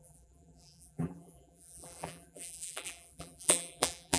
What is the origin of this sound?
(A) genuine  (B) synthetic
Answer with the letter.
B